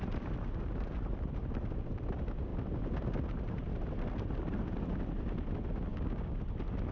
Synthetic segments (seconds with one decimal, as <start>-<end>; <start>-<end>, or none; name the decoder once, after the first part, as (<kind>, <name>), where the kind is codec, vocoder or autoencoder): 5.9-6.4 (codec, DAC)

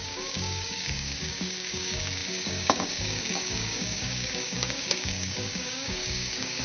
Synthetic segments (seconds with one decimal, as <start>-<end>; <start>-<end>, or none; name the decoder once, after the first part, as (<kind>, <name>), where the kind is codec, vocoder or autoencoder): 0.0-6.6 (codec, DAC)

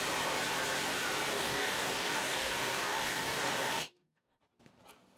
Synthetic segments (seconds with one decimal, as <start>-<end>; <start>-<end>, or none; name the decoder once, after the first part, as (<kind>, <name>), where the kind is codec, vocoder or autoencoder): 1.3-4.4 (codec, DAC)

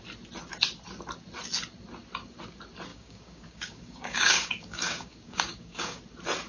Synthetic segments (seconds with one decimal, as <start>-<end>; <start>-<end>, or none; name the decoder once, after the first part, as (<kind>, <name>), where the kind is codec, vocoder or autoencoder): 2.9-6.0 (codec, DAC)

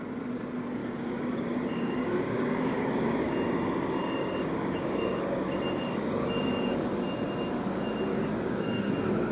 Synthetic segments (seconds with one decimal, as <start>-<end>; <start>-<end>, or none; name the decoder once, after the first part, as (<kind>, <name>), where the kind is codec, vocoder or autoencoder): 0.8-3.3 (codec, DAC); 4.0-6.8; 8.1-8.9

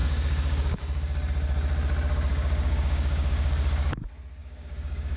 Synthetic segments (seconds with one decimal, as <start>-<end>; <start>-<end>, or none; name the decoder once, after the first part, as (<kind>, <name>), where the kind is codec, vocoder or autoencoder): 0.0-0.8 (codec, DAC); 2.3-4.0; 4.4-5.2

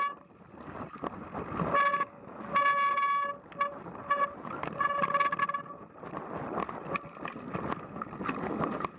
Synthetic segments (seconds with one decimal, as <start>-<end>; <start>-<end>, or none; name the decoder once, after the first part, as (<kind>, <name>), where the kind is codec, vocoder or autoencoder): 1.9-2.4 (codec, DAC)

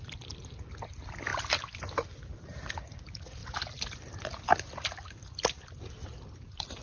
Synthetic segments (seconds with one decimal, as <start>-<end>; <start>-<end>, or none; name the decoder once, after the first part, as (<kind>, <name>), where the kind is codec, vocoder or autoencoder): none